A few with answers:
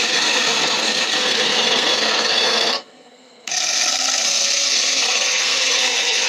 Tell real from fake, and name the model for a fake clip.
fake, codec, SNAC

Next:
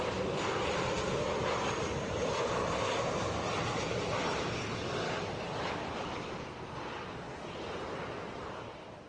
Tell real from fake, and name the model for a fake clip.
fake, vocoder, BigVGAN v2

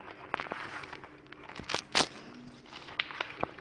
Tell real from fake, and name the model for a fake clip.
real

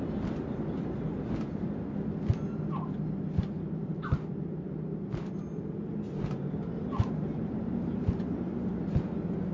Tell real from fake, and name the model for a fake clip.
real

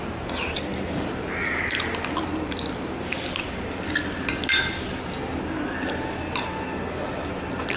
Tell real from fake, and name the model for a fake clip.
real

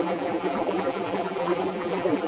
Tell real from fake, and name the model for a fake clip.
fake, vocoder, BigVGAN v2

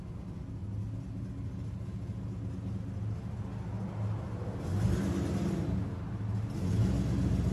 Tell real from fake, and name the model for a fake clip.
real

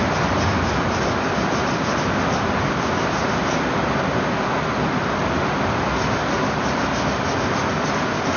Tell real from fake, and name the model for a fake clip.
real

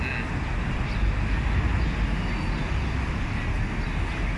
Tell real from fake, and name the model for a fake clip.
real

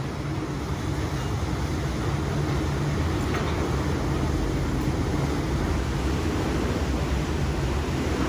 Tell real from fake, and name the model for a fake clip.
real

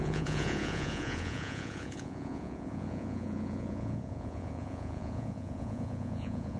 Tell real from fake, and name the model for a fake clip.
fake, vocoder, Vocos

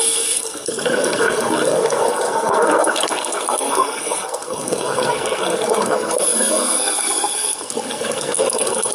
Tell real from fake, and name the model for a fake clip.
fake, codec, SNAC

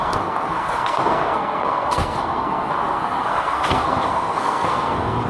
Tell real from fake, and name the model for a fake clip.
fake, codec, SNAC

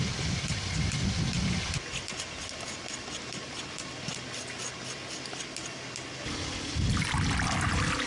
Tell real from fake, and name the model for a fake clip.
real